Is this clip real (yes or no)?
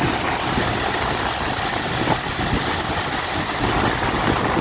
yes